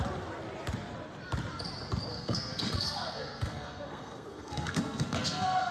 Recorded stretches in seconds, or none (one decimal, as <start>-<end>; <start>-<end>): 0.0-2.1